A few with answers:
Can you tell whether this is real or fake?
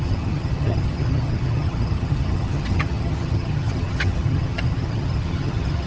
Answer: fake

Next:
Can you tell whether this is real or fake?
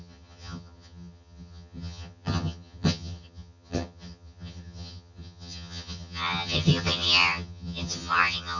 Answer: fake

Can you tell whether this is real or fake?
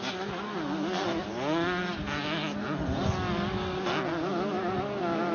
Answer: real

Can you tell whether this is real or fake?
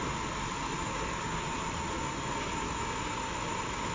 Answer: real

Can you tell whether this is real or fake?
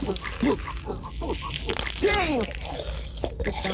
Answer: real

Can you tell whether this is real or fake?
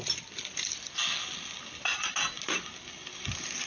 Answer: real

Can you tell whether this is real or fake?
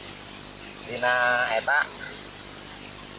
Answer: real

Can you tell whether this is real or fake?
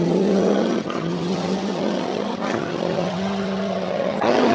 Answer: fake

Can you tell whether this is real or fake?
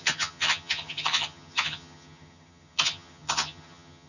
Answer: fake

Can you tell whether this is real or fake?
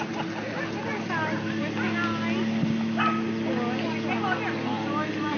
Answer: real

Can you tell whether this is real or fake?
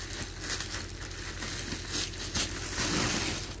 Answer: real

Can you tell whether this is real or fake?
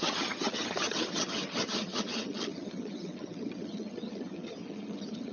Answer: fake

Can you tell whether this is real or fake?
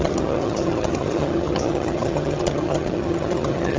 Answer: fake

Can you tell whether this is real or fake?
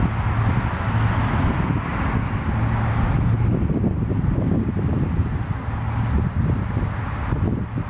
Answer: real